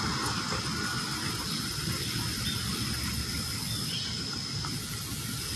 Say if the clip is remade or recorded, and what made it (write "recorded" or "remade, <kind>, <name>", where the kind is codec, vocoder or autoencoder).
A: recorded